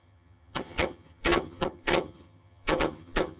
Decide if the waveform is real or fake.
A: fake